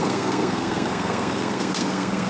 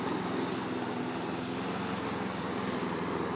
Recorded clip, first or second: second